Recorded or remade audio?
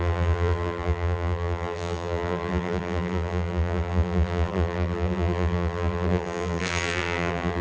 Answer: remade